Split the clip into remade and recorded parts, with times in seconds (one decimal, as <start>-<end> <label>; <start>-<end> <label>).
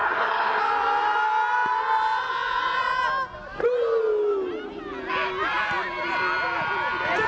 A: 0.0-0.6 remade; 0.6-7.3 recorded